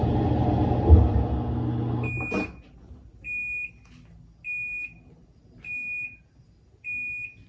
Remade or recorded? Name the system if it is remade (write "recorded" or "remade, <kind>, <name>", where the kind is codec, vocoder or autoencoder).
recorded